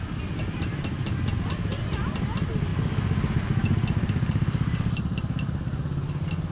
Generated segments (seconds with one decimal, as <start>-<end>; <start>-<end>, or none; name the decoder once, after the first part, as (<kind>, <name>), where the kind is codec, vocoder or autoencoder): none